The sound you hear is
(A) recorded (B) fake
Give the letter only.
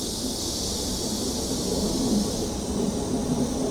A